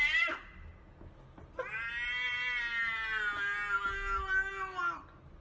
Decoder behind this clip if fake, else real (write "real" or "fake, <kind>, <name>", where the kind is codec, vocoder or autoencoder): real